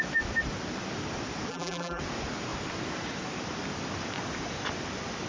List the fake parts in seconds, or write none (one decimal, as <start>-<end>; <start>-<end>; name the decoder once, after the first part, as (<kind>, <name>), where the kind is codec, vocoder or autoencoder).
1.5-2.0 (vocoder, BigVGAN v2)